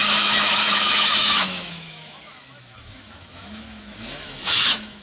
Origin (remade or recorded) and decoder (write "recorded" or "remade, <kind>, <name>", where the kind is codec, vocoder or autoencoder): remade, autoencoder, DAC-VAE